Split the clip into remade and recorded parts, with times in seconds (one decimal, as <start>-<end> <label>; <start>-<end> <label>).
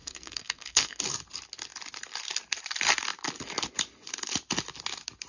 0.0-1.0 remade; 1.0-5.3 recorded